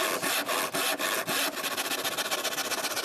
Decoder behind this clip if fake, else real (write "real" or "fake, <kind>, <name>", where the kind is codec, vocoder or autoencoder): real